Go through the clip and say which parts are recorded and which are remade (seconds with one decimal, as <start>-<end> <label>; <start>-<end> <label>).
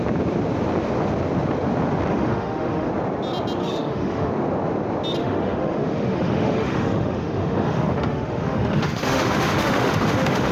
0.0-2.1 recorded; 2.1-2.9 remade; 2.9-3.6 recorded; 3.6-4.3 remade; 4.3-5.2 recorded; 5.2-10.5 remade